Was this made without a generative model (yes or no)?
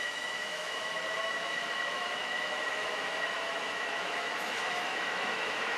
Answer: no